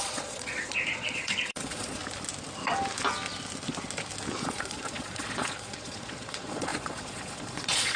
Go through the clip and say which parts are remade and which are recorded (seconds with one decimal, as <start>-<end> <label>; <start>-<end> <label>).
0.0-2.0 remade; 2.0-4.4 recorded; 4.4-8.0 remade